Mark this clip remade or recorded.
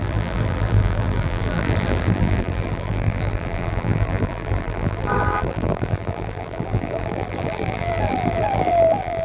remade